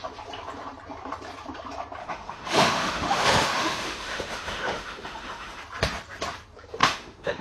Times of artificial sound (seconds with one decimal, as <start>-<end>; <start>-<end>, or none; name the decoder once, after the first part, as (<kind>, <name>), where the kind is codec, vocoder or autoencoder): 2.0-5.6 (autoencoder, DAC-VAE); 6.8-7.4